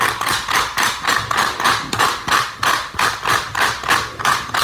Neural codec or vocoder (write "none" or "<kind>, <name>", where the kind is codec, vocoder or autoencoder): none